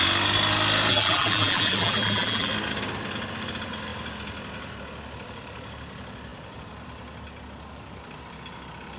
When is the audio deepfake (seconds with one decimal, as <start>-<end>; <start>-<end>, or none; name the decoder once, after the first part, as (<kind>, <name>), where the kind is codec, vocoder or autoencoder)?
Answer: 0.9-2.5 (vocoder, BigVGAN v2)